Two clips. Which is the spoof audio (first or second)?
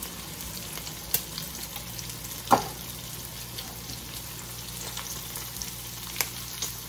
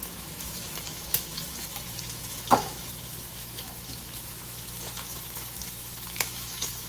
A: second